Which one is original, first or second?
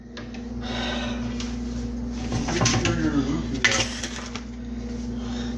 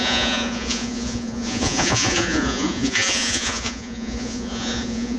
first